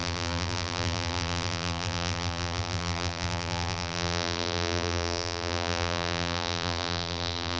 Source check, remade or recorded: remade